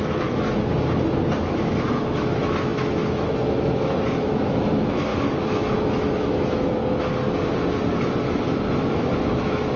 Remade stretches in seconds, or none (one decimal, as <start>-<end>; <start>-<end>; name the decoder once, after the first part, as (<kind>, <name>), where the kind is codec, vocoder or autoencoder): 0.0-0.7 (autoencoder, DAC-VAE); 1.4-6.8; 8.7-9.8

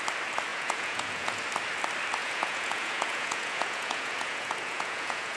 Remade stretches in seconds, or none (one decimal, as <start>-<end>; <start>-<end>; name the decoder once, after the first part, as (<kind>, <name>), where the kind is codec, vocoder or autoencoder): 0.5-1.4 (vocoder, Vocos); 2.2-5.4

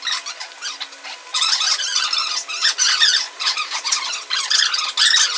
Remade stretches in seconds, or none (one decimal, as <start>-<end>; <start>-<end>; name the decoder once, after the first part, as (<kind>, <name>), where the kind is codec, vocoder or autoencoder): 1.3-1.8 (vocoder, Vocos); 2.6-4.1

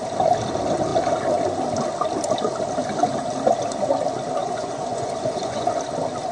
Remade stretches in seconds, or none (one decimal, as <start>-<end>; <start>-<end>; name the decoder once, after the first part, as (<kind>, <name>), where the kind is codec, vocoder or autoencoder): 4.4-5.7 (vocoder, Vocos)

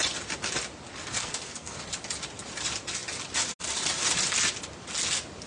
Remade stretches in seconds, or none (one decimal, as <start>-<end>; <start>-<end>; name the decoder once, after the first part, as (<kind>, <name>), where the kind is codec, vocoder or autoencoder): 1.2-1.8 (codec, SNAC)

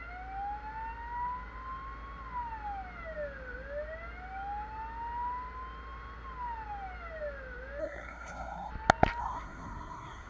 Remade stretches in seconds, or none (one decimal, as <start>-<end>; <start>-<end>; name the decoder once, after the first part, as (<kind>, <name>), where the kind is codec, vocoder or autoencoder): 7.8-8.7 (codec, SNAC); 9.2-10.3